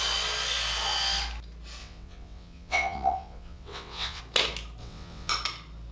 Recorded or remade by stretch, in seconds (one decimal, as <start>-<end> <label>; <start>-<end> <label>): 0.0-1.8 recorded; 1.8-4.2 remade; 4.2-4.8 recorded; 4.8-5.3 remade; 5.3-5.9 recorded